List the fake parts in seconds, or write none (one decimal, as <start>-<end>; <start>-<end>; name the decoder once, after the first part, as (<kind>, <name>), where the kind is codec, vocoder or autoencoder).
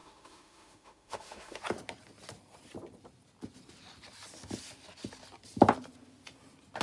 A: 0.0-1.6 (autoencoder, DAC-VAE)